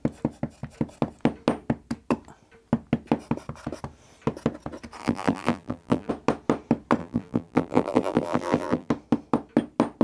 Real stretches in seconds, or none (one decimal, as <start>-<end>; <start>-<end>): 0.0-5.0; 6.1-7.0; 8.9-10.0